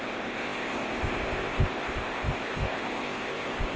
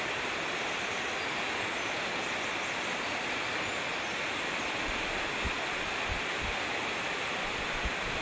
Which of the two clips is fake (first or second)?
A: first